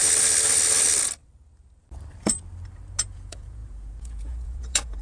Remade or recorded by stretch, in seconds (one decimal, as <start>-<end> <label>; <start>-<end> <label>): 0.0-3.0 recorded; 3.0-5.0 remade